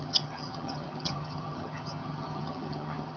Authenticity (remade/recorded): remade